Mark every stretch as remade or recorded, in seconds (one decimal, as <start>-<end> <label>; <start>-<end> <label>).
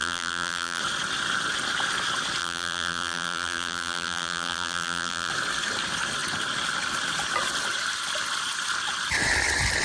0.0-0.8 remade; 0.8-2.4 recorded; 2.4-5.3 remade; 5.3-9.8 recorded